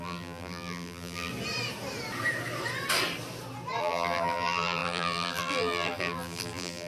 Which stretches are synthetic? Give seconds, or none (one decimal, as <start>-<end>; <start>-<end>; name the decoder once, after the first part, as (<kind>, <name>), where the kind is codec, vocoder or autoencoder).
0.0-1.3 (vocoder, BigVGAN v2); 3.8-6.9